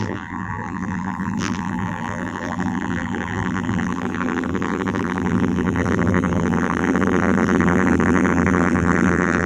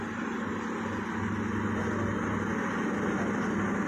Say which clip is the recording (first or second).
second